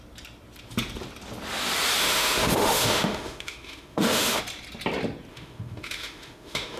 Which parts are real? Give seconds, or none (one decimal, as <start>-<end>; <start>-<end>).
0.0-2.0; 4.4-5.3